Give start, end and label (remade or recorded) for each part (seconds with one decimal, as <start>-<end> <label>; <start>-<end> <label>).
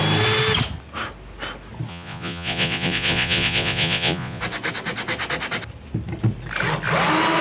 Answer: 0.0-1.9 recorded; 1.9-4.4 remade; 4.4-7.4 recorded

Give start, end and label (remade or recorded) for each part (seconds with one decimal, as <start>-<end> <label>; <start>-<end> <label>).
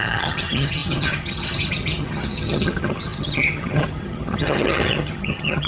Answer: 0.0-5.7 remade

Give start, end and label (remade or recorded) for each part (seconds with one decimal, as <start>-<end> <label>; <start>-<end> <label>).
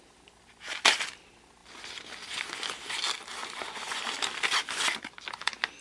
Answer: 0.0-3.4 recorded; 3.4-4.0 remade; 4.0-5.8 recorded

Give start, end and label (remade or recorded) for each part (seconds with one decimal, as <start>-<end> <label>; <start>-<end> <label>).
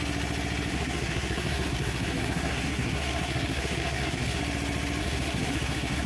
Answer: 0.0-0.7 recorded; 0.7-4.4 remade; 4.4-5.0 recorded; 5.0-6.1 remade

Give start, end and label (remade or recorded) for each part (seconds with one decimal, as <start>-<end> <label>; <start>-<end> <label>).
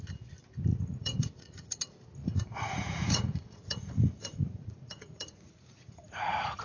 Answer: 0.0-0.7 recorded; 0.7-1.8 remade; 1.8-2.2 recorded; 2.2-6.6 remade